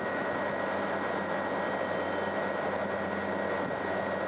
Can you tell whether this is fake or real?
real